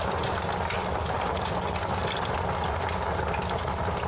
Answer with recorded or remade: recorded